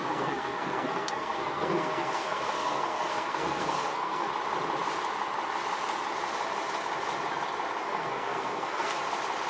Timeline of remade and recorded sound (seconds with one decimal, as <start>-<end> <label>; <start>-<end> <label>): 0.0-4.3 remade; 4.3-7.8 recorded; 7.8-9.0 remade; 9.0-9.5 recorded